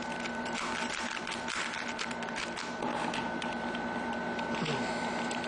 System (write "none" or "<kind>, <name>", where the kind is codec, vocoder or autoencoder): none